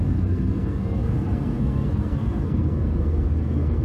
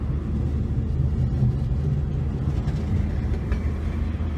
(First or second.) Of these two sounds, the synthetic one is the first